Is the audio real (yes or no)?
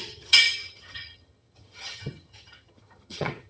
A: no